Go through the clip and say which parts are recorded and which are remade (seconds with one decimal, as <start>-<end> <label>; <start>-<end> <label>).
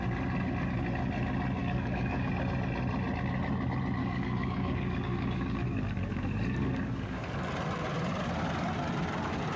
0.0-1.6 recorded; 1.6-2.3 remade; 2.3-4.0 recorded; 4.0-7.5 remade; 7.5-9.6 recorded